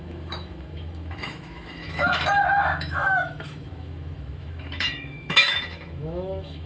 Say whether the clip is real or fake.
fake